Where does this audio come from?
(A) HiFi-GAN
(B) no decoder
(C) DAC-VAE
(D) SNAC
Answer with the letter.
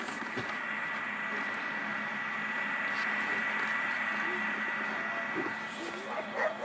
B